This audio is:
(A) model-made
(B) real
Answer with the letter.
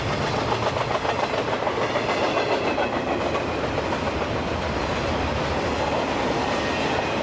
B